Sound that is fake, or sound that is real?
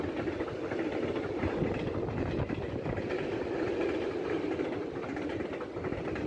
real